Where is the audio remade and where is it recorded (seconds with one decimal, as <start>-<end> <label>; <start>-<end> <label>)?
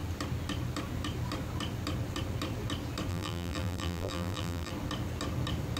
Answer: 0.0-3.1 recorded; 3.1-4.7 remade; 4.7-5.8 recorded